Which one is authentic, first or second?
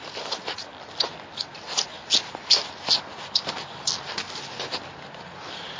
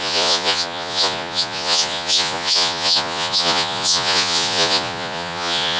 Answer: first